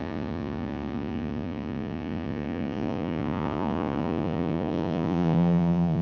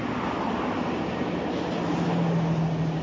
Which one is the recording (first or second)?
second